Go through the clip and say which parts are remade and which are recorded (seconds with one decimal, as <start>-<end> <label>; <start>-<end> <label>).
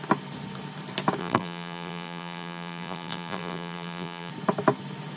0.0-1.2 recorded; 1.2-4.3 remade; 4.3-5.2 recorded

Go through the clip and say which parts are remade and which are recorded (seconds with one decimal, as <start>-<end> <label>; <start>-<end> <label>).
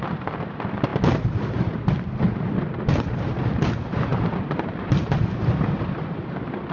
0.0-6.7 remade